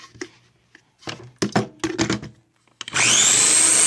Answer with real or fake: real